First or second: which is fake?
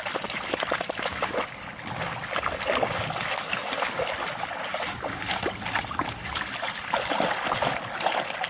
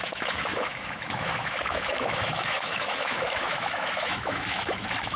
second